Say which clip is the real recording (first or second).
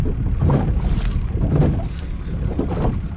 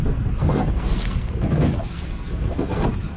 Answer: first